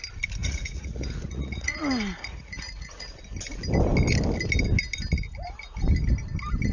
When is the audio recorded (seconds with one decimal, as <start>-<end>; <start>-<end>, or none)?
0.0-0.4; 3.1-6.7